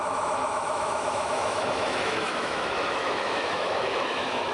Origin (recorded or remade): remade